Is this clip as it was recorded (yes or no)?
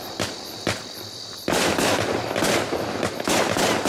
yes